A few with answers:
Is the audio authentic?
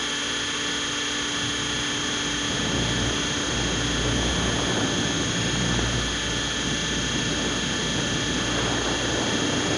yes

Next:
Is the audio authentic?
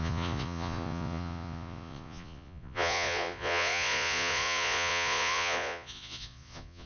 no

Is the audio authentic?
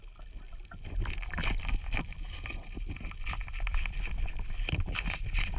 yes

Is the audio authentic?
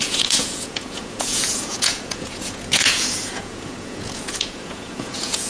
no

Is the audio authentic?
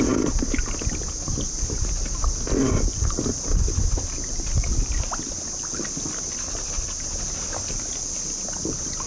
yes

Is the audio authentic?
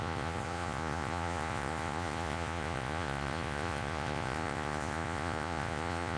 no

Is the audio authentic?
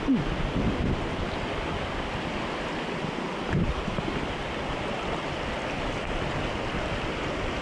yes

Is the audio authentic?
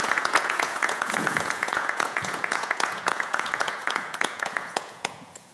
no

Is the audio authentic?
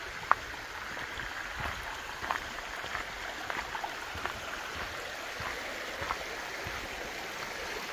yes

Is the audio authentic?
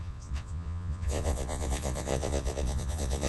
no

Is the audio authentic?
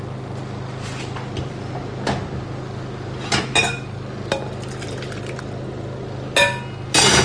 yes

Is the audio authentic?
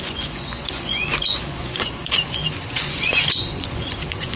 no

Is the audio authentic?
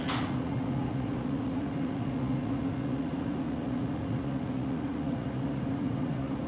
no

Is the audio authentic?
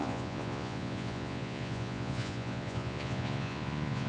no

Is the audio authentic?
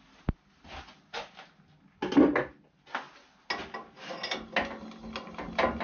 yes